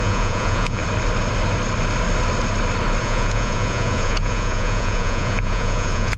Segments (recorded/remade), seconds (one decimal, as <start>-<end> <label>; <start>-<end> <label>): 0.0-0.8 remade; 0.8-3.0 recorded; 3.0-6.2 remade